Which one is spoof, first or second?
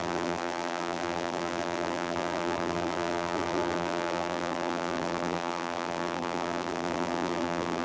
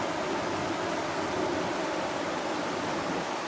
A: first